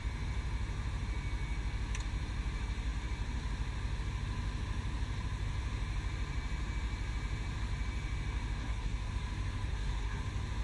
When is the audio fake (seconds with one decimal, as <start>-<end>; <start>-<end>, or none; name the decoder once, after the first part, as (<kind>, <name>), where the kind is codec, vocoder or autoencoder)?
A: 8.6-9.1 (codec, SNAC); 9.7-10.2